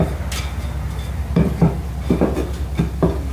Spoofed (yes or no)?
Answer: no